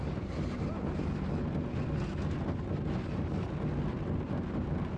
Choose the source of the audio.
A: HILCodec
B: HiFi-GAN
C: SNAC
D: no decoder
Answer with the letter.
D